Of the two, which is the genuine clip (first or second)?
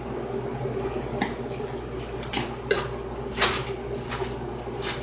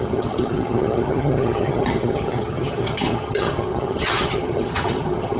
first